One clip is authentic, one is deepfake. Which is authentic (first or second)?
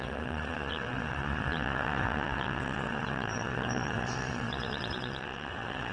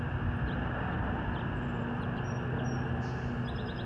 second